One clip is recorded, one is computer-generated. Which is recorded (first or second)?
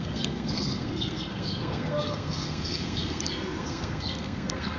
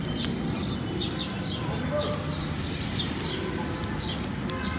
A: second